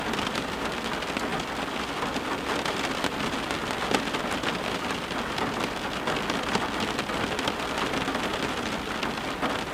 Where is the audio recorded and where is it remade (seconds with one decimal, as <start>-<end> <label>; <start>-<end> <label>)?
0.0-9.7 recorded